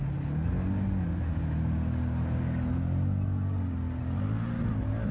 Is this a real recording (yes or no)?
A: yes